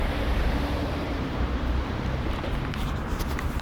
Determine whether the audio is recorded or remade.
remade